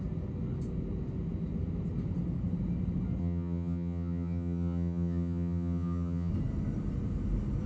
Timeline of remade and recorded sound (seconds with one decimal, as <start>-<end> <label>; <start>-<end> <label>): 0.0-3.2 recorded; 3.2-6.3 remade; 6.3-7.7 recorded